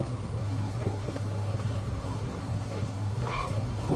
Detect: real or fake fake